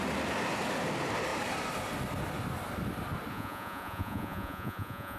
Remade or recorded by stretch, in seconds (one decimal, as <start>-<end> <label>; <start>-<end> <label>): 0.0-3.3 recorded; 3.3-5.2 remade